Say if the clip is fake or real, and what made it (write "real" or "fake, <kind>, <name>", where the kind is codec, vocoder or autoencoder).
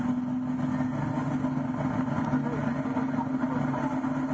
real